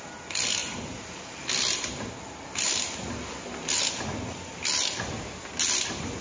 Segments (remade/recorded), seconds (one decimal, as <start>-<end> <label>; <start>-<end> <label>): 0.0-6.2 recorded